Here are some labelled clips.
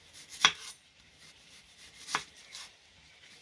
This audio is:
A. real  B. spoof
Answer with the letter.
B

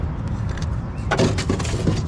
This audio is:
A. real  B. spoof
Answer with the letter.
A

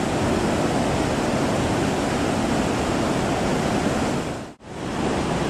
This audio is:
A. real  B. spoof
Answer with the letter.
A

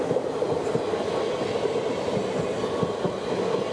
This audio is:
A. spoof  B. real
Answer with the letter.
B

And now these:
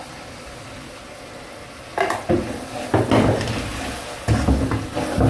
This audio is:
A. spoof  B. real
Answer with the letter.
B